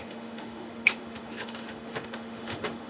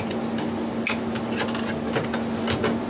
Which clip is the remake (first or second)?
first